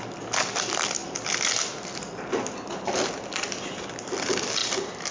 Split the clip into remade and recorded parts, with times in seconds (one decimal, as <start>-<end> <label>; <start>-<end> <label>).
0.0-5.1 recorded